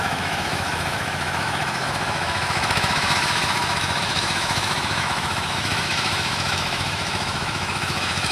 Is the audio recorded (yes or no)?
no